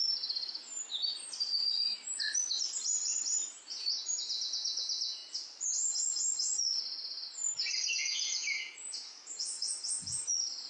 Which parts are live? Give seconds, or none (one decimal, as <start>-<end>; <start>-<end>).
0.0-3.7; 5.2-7.9; 10.2-10.7